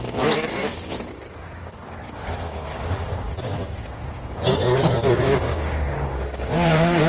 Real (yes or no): no